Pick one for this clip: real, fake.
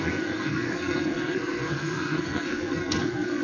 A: fake